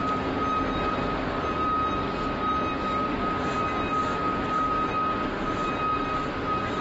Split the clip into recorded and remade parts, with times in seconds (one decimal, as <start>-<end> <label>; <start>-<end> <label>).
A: 0.0-6.8 recorded